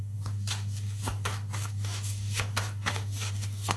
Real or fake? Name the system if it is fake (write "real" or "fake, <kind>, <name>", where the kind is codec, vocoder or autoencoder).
fake, codec, DAC